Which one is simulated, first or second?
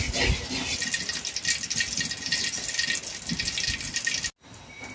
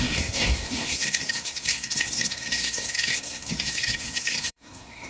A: second